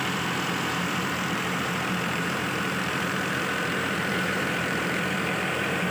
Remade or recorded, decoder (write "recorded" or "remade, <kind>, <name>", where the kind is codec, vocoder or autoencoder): remade, vocoder, BigVGAN v2